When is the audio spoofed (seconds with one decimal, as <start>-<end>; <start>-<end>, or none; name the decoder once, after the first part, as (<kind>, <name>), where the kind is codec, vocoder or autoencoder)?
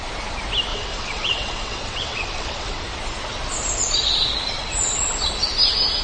0.7-2.8 (vocoder, WaveNeXt)